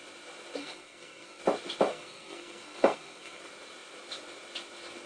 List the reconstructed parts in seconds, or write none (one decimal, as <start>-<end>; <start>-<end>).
0.6-1.4; 1.9-3.4